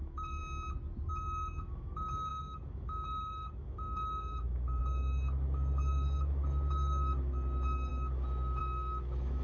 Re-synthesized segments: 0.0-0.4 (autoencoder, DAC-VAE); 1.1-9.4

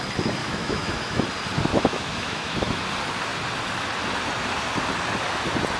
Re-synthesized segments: 0.4-1.2 (autoencoder, DAC-VAE); 1.7-2.8

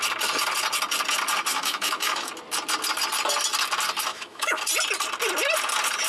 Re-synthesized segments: 1.5-2.3 (autoencoder, DAC-VAE); 4.1-4.6

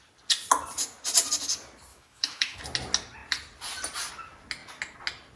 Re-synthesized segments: 1.9-2.6 (autoencoder, DAC-VAE)

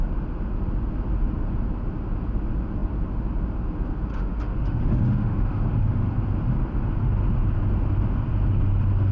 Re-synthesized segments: 4.1-6.1 (autoencoder, DAC-VAE)